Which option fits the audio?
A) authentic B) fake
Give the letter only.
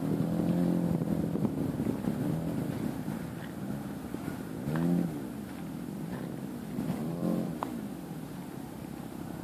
A